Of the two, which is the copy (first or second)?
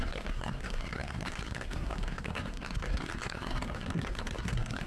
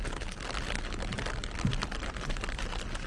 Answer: first